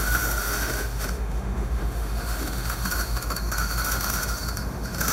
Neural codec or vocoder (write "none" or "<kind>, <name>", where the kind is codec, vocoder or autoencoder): autoencoder, DAC-VAE